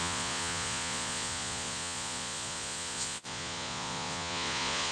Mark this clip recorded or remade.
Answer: remade